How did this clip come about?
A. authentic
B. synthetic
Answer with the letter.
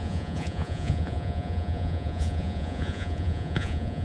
B